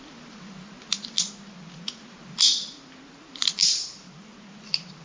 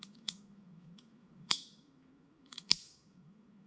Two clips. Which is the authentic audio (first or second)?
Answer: first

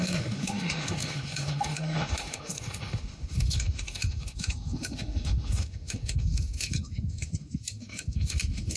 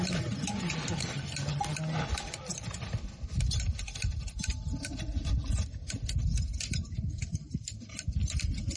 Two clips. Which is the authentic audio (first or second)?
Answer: second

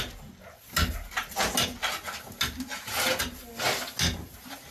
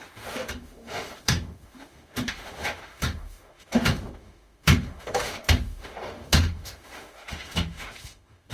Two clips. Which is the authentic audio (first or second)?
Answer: first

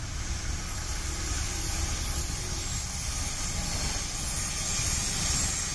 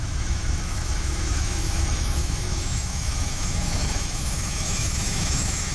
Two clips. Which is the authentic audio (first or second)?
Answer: first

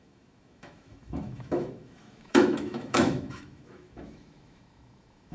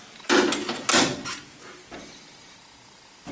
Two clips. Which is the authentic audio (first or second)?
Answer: second